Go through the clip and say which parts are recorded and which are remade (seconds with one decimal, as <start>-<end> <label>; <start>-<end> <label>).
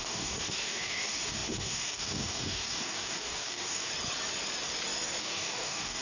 0.0-3.9 remade; 3.9-5.2 recorded; 5.2-6.0 remade